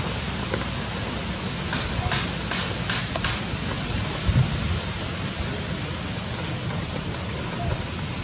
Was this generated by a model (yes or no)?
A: no